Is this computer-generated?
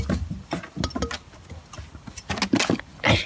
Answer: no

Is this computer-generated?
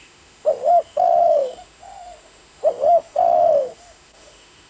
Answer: yes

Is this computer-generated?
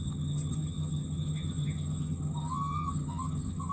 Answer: yes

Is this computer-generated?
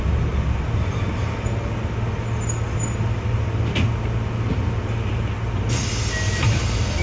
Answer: no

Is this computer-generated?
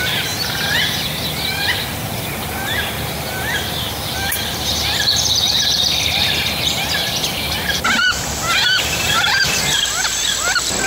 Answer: yes